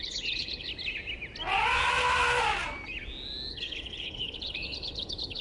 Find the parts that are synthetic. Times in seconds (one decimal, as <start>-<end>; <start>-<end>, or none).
0.0-0.7; 3.5-5.4